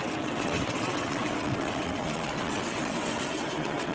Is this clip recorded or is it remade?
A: remade